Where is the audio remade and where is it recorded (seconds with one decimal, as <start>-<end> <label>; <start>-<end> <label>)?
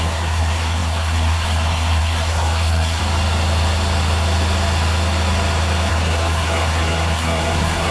0.0-3.0 remade; 3.0-5.9 recorded; 5.9-7.9 remade